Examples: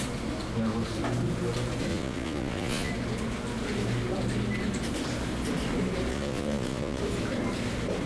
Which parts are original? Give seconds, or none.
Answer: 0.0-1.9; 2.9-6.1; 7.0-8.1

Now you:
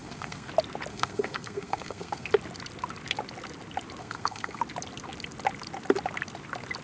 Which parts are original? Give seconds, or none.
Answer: 0.5-0.9; 2.3-4.0; 4.6-6.8

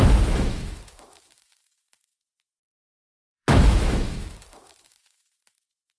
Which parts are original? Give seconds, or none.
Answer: none